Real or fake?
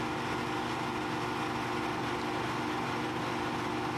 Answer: real